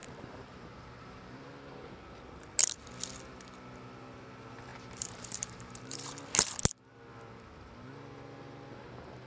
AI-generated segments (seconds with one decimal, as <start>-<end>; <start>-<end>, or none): 0.0-1.5; 4.7-6.2